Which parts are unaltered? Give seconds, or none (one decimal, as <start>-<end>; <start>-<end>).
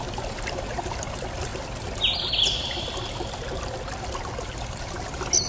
0.0-5.5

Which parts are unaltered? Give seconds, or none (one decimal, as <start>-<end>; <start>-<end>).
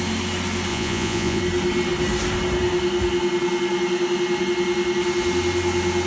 0.0-0.7; 1.4-6.1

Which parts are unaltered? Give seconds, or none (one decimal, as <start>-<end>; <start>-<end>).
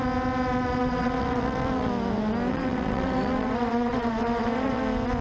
0.0-0.8; 1.9-2.5; 4.8-5.2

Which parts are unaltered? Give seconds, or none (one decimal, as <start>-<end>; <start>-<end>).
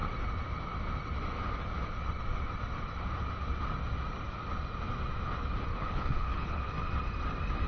0.0-5.7; 6.7-7.7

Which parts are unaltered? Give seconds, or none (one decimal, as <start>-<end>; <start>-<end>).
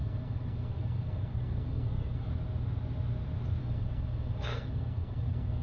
2.3-3.6